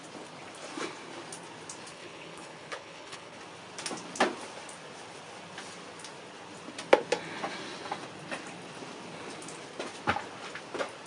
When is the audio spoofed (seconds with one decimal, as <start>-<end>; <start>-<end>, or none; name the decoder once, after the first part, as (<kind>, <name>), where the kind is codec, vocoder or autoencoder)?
1.9-3.4 (codec, HILCodec)